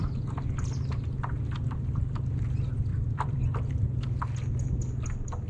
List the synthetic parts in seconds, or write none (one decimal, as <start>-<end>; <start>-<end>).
2.9-3.7